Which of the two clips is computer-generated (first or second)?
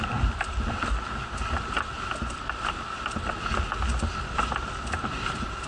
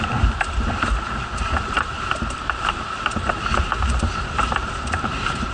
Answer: second